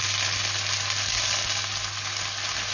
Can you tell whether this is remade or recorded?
recorded